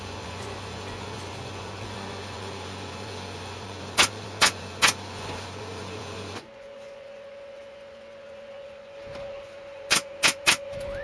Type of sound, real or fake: fake